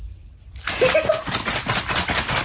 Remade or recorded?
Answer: recorded